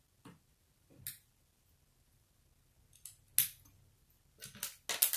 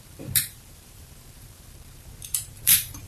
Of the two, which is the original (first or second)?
first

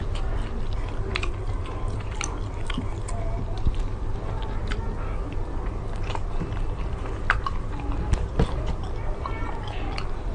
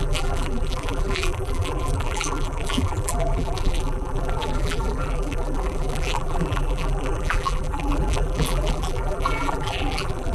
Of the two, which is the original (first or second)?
first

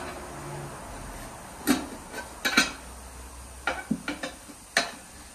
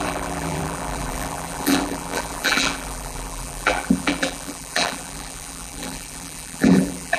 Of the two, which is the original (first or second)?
first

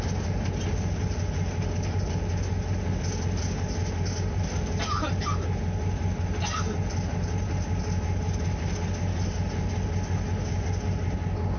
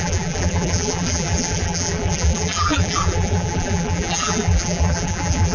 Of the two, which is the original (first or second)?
first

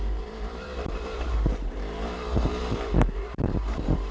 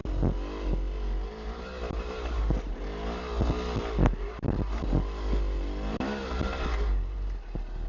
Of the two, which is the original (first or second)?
second